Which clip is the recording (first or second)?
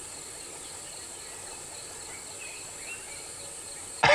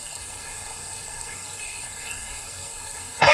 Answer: first